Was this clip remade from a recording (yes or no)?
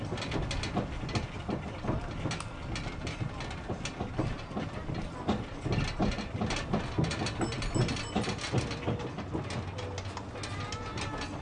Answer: no